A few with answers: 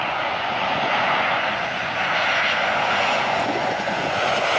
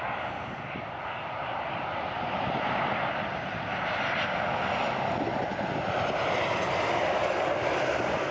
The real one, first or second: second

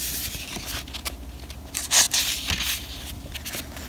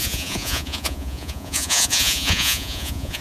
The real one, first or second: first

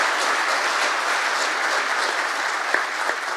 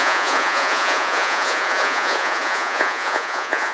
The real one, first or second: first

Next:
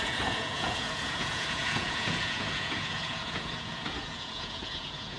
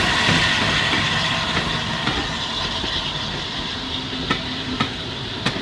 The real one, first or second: second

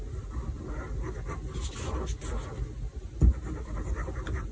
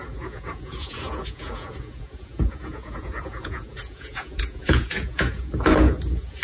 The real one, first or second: first